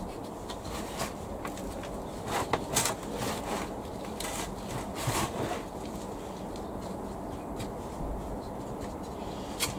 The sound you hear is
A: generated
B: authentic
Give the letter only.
B